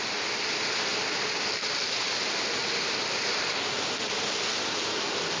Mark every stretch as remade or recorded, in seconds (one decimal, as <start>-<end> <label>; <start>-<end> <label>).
0.0-5.4 recorded